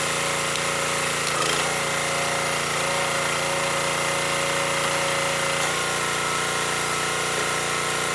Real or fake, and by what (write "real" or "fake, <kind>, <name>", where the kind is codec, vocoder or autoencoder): real